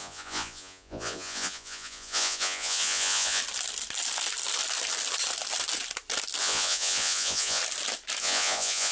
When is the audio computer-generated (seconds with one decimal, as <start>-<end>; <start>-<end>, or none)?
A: 0.0-3.4; 6.4-7.6; 8.2-8.9